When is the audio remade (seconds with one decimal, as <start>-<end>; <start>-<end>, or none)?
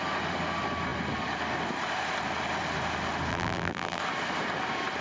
3.3-4.0